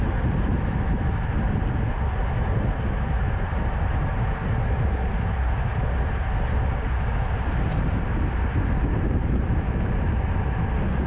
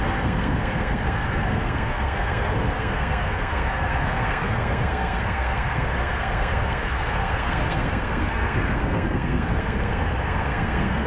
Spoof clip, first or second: second